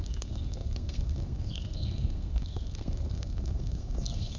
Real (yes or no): no